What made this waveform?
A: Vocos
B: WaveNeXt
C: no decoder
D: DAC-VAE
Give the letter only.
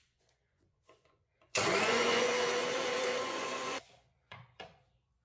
A